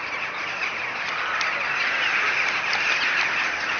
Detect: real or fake fake